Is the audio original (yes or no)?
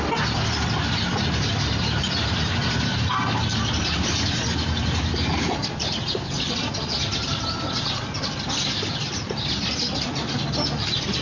yes